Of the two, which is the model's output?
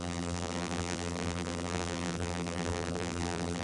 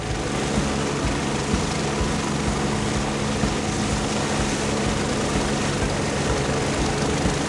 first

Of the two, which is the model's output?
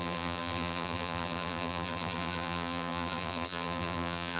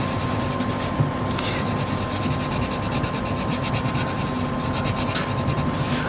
first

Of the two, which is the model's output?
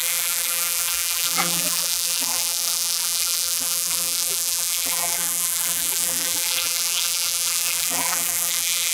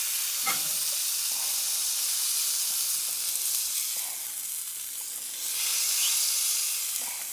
first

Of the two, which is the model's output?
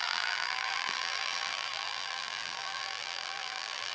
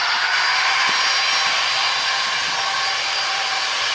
first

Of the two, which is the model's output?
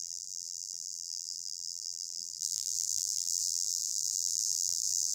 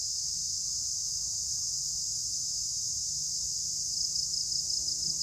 first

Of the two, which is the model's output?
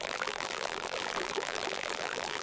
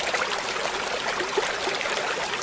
first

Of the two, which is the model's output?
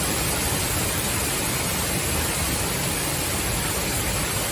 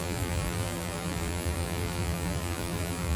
second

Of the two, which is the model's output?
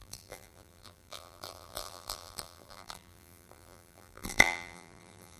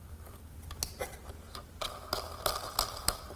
first